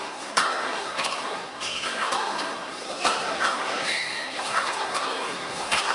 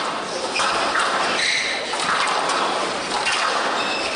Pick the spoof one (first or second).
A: first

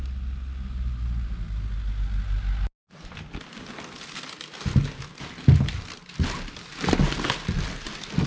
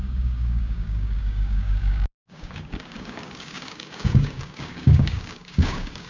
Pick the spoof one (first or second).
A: second